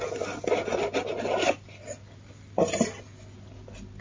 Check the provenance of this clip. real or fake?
real